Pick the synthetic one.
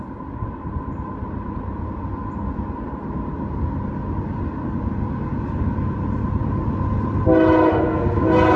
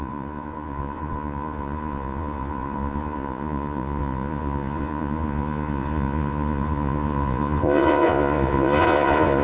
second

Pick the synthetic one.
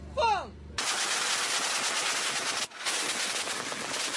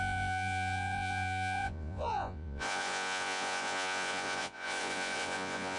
second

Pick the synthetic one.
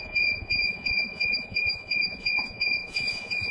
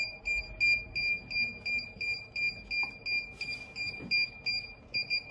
first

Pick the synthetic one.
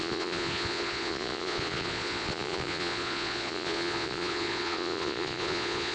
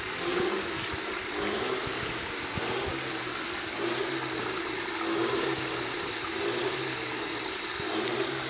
first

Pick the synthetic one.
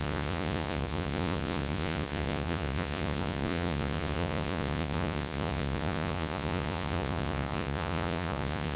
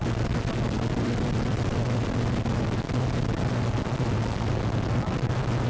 first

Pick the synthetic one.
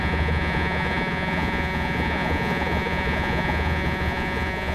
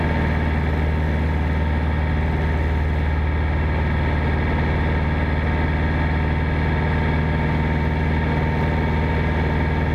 first